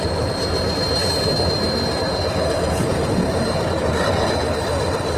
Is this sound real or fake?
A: real